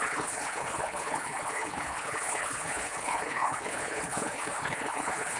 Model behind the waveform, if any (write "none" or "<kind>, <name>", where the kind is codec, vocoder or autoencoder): codec, HILCodec